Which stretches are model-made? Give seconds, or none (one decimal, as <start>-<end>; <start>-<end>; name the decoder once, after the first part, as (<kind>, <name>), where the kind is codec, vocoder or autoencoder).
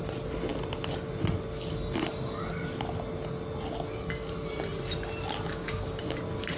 5.5-6.0 (codec, DAC)